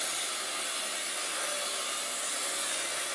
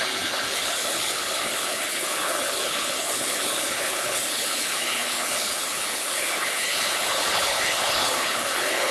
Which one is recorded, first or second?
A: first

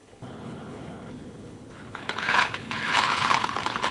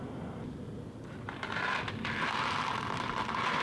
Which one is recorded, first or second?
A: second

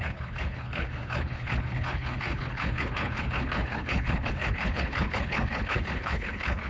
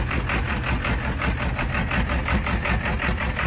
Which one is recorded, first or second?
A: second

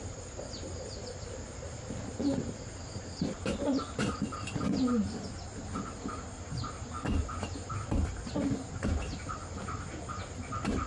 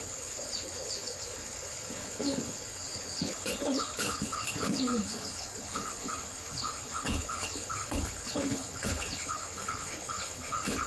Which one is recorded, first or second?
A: first